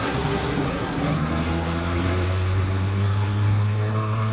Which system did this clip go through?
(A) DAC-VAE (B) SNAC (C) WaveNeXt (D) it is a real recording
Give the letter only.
B